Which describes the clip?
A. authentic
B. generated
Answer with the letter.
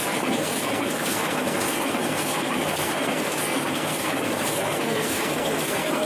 B